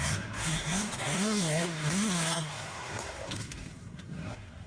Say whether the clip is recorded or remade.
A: remade